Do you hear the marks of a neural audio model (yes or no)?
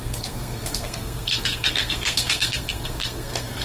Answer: yes